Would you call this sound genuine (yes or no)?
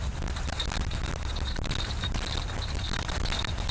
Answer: yes